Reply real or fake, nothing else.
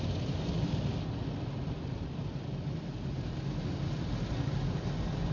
real